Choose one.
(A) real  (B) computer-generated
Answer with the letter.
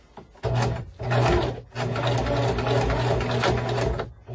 A